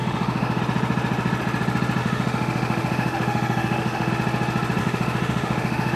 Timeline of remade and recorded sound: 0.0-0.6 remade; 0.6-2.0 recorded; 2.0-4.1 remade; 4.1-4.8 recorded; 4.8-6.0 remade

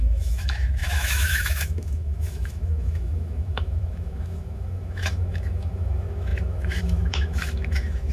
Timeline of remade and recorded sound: 0.0-8.1 remade

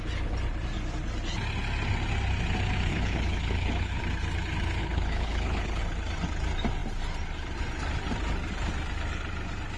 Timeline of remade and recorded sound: 0.0-2.9 recorded; 2.9-4.0 remade; 4.0-4.8 recorded; 4.8-5.8 remade; 5.8-9.8 recorded

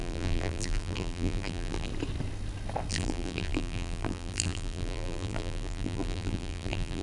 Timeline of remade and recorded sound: 0.0-1.9 remade; 1.9-2.9 recorded; 2.9-7.0 remade